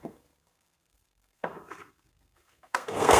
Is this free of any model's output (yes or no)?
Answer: no